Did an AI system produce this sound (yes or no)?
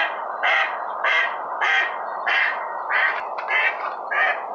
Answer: no